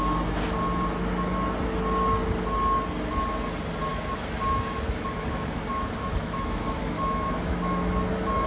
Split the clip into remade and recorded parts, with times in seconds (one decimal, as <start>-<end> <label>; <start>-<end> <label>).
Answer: 0.0-3.9 recorded; 3.9-8.5 remade